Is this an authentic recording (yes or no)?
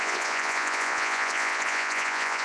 no